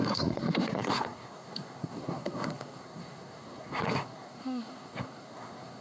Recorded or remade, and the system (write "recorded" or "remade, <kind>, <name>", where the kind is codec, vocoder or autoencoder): remade, codec, SNAC